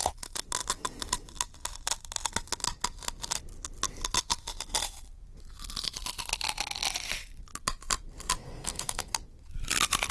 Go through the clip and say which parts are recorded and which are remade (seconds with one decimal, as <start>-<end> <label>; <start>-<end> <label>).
0.0-8.4 recorded; 8.4-9.1 remade; 9.1-10.1 recorded

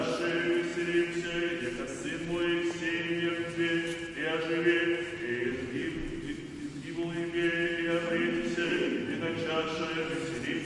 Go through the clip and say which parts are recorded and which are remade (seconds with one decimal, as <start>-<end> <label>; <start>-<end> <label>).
0.0-10.6 recorded